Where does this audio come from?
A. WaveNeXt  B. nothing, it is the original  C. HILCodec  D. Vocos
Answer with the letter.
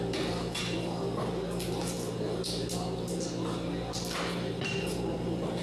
B